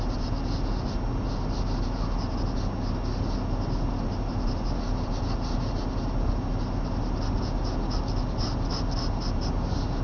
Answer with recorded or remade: recorded